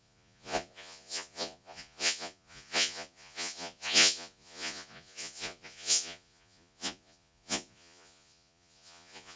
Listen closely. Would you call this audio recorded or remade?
remade